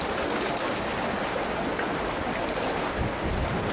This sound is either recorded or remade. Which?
recorded